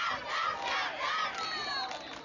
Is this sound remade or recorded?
recorded